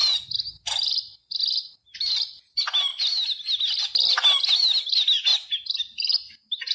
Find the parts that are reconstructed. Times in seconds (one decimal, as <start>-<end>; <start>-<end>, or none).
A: none